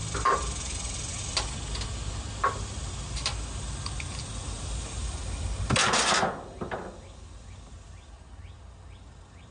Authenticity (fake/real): real